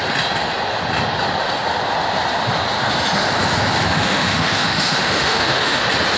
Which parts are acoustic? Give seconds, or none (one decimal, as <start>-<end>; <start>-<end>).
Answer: 0.0-3.9; 5.8-6.2